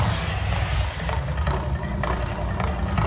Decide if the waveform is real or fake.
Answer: real